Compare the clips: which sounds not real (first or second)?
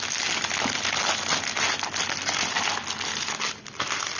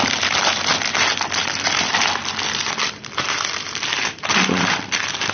second